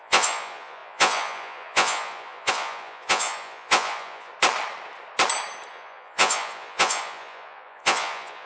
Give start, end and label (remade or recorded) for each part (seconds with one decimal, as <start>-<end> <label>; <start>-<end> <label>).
0.0-4.3 remade; 4.3-5.7 recorded; 5.7-8.5 remade